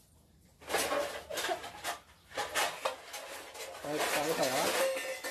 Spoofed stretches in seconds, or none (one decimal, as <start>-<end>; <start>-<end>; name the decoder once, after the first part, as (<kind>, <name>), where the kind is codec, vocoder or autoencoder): none